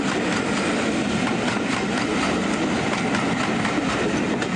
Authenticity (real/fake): real